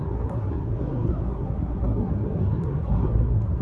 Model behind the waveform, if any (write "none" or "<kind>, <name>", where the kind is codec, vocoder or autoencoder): codec, SNAC